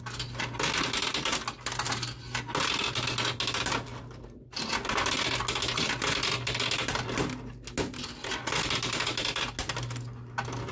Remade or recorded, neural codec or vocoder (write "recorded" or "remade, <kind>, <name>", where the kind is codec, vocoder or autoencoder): recorded